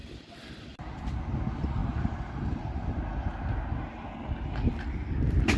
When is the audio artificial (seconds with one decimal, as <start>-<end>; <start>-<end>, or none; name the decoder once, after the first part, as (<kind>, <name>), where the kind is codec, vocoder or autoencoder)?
none